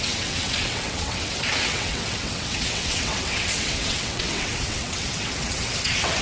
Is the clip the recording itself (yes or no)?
no